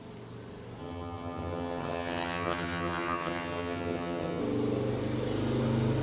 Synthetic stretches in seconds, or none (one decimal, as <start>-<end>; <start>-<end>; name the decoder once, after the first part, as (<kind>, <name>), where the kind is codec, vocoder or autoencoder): 0.8-4.4 (vocoder, HiFi-GAN)